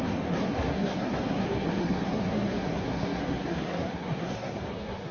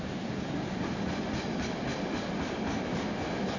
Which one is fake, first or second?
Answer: first